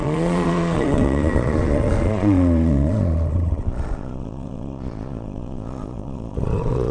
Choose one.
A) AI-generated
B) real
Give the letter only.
A